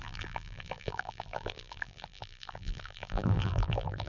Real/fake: fake